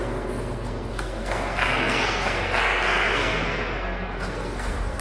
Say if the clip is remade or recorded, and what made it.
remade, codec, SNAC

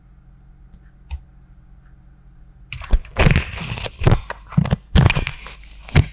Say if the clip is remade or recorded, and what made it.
recorded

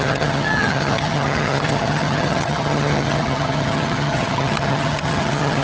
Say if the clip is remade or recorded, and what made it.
remade, vocoder, HiFi-GAN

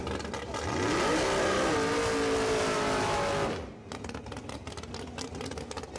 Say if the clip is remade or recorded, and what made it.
recorded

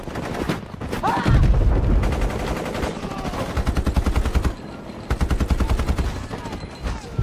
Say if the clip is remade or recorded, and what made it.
recorded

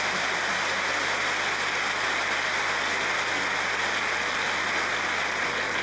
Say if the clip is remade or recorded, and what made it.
recorded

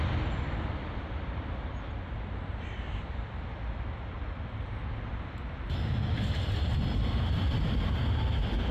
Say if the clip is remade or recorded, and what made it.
recorded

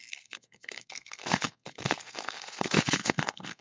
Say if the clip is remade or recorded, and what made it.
remade, codec, SNAC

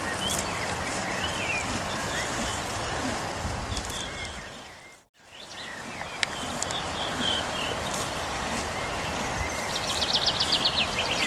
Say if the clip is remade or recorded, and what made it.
recorded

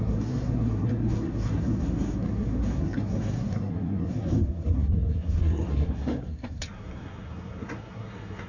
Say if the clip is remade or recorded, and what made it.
remade, codec, SNAC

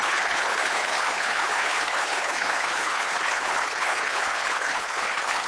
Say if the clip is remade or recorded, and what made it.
remade, codec, HILCodec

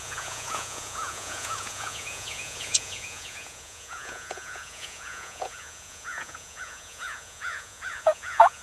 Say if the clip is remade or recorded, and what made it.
remade, vocoder, Vocos